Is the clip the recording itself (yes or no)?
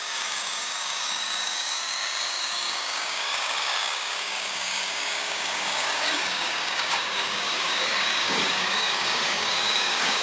no